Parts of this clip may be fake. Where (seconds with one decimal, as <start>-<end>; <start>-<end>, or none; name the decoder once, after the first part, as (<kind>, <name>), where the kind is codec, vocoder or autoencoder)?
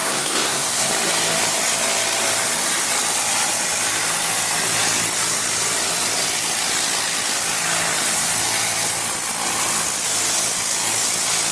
0.0-0.9 (codec, SNAC)